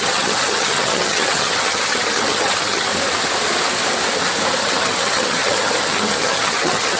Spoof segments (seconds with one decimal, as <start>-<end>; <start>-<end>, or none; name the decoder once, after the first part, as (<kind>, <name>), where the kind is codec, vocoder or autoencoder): 0.0-2.9 (vocoder, HiFi-GAN); 4.6-7.0